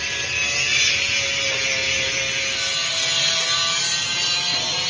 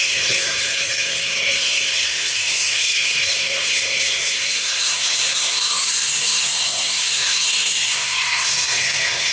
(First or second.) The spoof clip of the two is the second